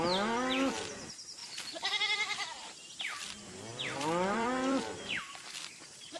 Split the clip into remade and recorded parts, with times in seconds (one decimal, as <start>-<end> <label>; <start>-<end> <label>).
0.0-1.4 recorded; 1.4-3.0 remade; 3.0-3.7 recorded; 3.7-6.2 remade